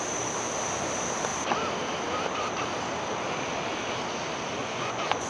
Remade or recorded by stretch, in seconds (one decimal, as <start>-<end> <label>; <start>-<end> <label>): 0.0-4.6 recorded; 4.6-5.3 remade